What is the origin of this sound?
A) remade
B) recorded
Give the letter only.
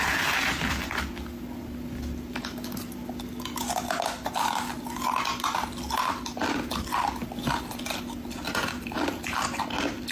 B